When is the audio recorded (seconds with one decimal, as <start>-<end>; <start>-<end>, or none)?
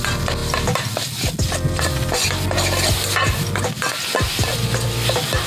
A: 0.0-5.5